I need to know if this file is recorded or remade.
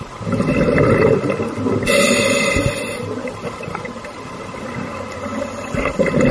recorded